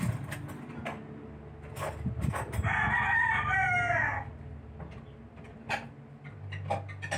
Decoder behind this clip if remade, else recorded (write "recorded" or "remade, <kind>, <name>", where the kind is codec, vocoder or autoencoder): recorded